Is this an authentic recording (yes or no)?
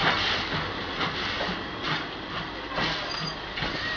yes